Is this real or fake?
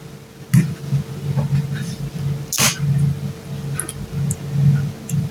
real